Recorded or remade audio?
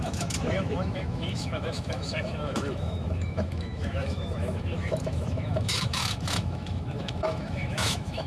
remade